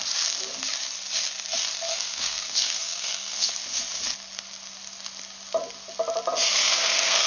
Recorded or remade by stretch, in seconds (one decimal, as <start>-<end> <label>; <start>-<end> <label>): 0.0-1.9 recorded; 1.9-3.5 remade; 3.5-6.5 recorded; 6.5-7.3 remade